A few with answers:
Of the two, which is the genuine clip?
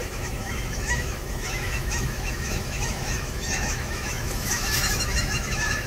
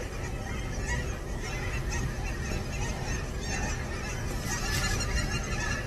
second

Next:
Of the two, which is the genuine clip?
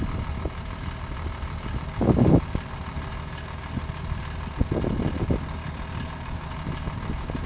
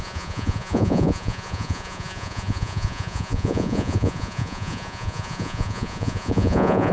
first